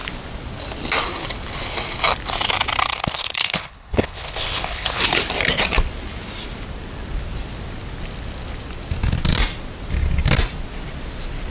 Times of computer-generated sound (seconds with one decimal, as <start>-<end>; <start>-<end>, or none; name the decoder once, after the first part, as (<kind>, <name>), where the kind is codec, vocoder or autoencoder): 2.9-5.0 (codec, HILCodec)